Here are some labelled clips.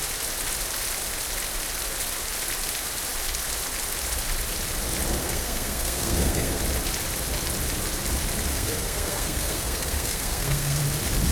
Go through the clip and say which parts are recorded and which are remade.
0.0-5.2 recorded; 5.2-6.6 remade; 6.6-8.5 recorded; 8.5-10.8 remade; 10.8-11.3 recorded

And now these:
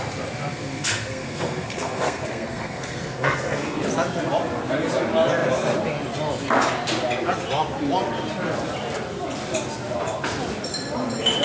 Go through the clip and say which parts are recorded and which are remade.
0.0-0.5 recorded; 0.5-3.8 remade; 3.8-11.4 recorded

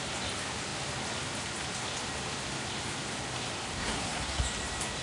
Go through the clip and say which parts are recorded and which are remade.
0.0-3.8 recorded; 3.8-4.4 remade; 4.4-5.0 recorded

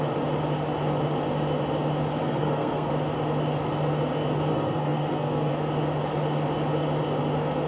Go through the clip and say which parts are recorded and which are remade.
0.0-2.2 recorded; 2.2-2.9 remade; 2.9-4.5 recorded; 4.5-5.5 remade; 5.5-7.7 recorded

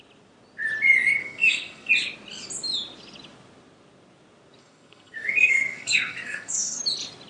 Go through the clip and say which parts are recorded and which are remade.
0.0-1.2 recorded; 1.2-1.9 remade; 1.9-4.6 recorded; 4.6-6.8 remade; 6.8-7.3 recorded

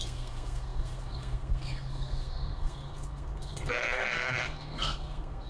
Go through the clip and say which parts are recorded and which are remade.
0.0-5.5 remade

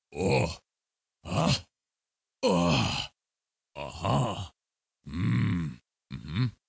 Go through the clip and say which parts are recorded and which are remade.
0.0-1.4 recorded; 1.4-1.9 remade; 1.9-6.7 recorded

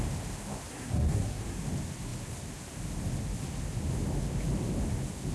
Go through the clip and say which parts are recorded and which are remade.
0.0-0.7 recorded; 0.7-1.6 remade; 1.6-5.3 recorded